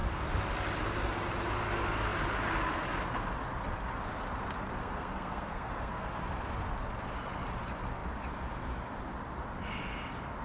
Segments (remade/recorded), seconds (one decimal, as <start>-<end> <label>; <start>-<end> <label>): 0.0-4.8 recorded; 4.8-6.1 remade; 6.1-10.4 recorded